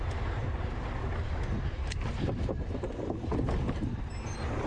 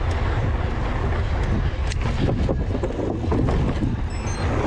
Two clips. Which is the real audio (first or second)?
second